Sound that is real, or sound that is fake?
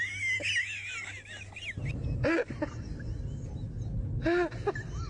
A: real